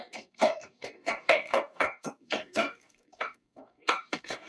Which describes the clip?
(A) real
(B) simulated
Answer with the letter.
B